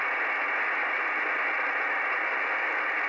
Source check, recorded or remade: recorded